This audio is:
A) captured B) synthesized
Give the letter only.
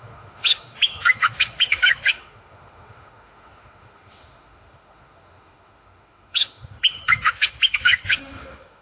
B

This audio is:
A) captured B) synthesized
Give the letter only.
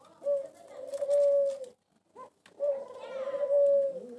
A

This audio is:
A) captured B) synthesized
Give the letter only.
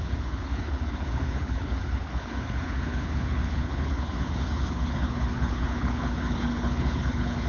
B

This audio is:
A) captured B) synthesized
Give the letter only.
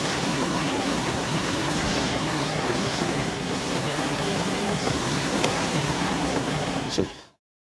B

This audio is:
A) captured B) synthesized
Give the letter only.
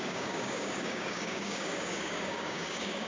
B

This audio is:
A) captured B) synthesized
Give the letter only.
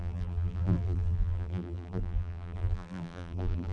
B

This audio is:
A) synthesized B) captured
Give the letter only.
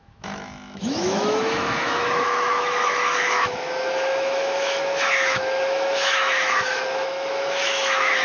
A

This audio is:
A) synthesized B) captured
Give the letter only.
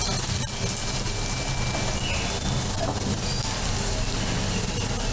B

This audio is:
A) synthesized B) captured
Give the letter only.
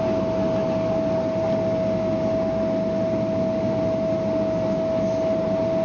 B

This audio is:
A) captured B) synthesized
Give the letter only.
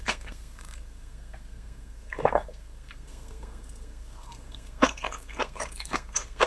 B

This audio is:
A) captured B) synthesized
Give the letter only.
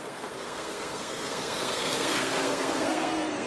B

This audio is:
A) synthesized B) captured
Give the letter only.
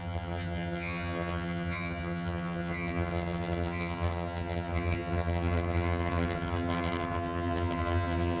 A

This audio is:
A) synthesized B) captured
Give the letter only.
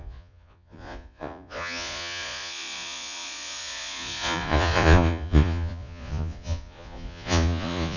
A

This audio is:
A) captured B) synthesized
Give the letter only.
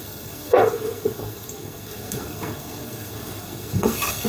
B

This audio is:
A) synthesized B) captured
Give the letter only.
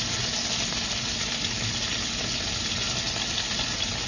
B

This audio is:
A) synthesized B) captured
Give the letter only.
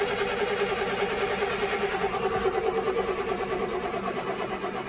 A